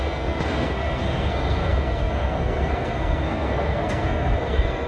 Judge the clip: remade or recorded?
remade